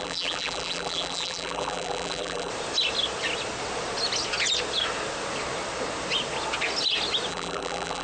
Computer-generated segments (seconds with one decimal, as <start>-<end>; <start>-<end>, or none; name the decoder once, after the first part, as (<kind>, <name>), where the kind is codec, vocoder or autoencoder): 0.0-2.5 (vocoder, BigVGAN v2); 7.3-8.0